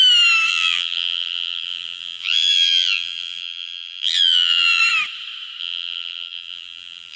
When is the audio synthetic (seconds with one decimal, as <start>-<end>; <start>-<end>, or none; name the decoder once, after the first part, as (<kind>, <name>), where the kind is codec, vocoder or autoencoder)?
0.5-4.8 (vocoder, BigVGAN v2); 5.6-7.2